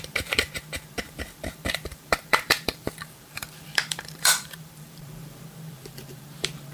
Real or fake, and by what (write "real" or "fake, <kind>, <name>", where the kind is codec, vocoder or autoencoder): fake, vocoder, BigVGAN v2